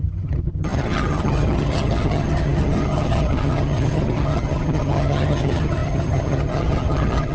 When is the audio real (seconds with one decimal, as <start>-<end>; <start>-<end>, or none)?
none